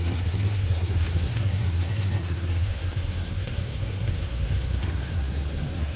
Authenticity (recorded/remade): remade